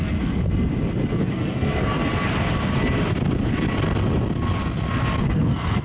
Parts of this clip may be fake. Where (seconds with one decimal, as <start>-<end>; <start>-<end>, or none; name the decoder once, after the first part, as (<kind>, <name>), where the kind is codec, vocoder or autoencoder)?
0.0-0.4 (codec, SNAC); 1.2-1.7; 5.2-5.8